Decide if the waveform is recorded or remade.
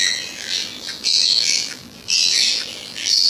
remade